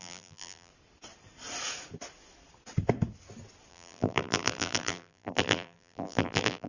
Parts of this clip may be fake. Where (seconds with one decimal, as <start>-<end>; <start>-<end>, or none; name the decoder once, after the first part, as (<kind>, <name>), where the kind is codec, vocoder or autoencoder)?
0.0-0.7 (vocoder, BigVGAN v2); 3.7-6.7